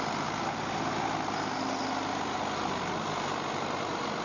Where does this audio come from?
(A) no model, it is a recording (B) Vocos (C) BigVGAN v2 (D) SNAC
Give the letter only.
A